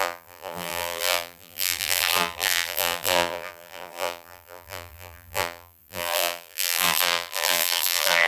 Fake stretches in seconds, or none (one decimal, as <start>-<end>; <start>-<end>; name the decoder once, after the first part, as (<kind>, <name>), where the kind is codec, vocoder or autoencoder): 0.0-8.3 (vocoder, BigVGAN v2)